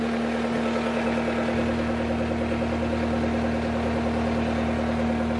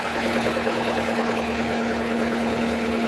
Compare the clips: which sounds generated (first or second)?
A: second